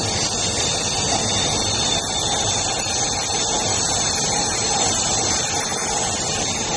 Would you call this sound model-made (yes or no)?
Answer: no